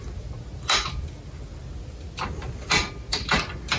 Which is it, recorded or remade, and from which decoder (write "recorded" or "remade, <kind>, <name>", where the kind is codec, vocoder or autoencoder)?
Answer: recorded